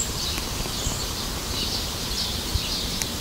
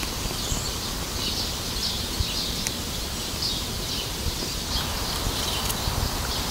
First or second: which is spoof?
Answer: first